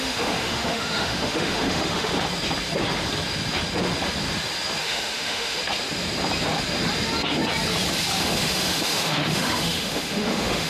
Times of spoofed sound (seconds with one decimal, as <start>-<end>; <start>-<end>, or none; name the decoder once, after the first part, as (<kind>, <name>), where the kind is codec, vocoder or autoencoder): 0.0-2.1 (autoencoder, DAC-VAE); 4.8-5.6; 8.2-10.7